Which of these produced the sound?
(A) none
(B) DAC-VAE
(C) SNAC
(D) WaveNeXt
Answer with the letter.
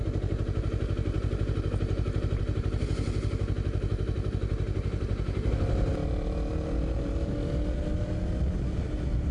A